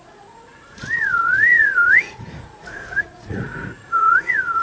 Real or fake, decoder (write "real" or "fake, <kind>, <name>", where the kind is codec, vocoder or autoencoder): fake, vocoder, Vocos